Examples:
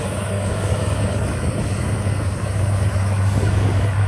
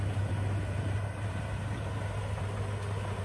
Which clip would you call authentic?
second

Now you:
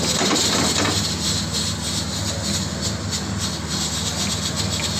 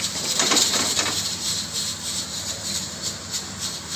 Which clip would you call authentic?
first